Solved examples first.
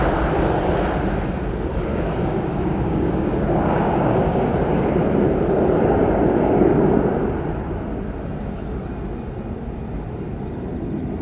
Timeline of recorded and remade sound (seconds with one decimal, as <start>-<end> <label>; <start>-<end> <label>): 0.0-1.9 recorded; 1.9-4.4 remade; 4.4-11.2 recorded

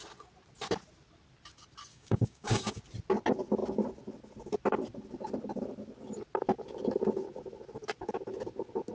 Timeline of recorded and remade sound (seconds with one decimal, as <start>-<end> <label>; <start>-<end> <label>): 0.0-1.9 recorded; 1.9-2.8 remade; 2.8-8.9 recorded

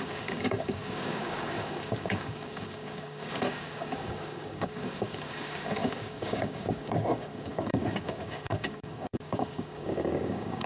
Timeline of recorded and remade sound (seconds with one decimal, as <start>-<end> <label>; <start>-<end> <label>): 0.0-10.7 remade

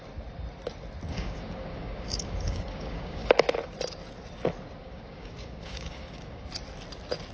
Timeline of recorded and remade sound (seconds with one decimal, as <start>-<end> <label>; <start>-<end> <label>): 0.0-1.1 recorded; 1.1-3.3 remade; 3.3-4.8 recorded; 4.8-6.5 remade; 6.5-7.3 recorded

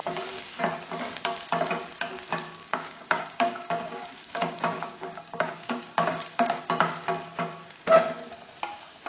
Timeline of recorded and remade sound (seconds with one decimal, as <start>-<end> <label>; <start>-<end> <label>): 0.0-0.6 remade; 0.6-2.6 recorded; 2.6-6.6 remade; 6.6-9.1 recorded

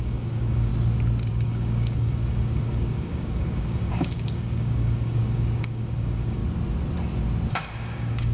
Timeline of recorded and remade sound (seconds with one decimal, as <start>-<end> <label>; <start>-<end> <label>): 0.0-0.7 remade; 0.7-1.3 recorded; 1.3-6.4 remade; 6.4-7.5 recorded; 7.5-8.3 remade

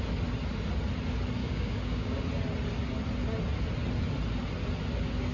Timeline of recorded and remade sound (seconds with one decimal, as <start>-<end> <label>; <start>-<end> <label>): 0.0-1.4 recorded; 1.4-2.2 remade; 2.2-5.3 recorded